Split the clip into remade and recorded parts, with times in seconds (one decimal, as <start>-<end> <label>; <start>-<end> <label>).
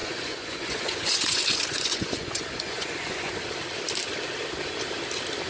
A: 0.0-3.3 remade; 3.3-5.5 recorded